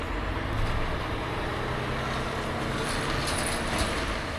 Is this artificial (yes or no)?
no